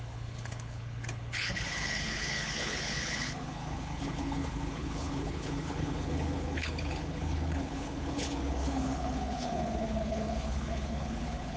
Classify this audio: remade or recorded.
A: remade